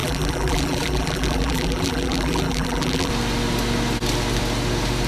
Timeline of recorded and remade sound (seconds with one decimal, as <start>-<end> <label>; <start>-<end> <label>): 0.0-3.1 remade; 3.1-5.1 recorded